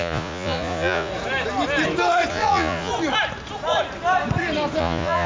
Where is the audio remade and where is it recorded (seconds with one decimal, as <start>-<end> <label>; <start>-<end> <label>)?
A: 0.0-1.1 remade; 1.1-2.3 recorded; 2.3-2.9 remade; 2.9-4.8 recorded; 4.8-5.3 remade